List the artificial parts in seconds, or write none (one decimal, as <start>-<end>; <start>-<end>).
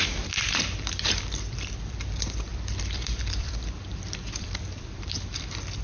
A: 0.0-5.8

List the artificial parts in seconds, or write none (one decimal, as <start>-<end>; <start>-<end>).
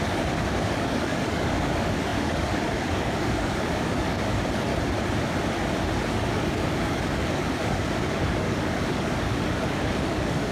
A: 0.0-4.7; 6.1-10.5